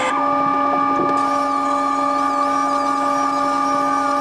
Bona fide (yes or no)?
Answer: yes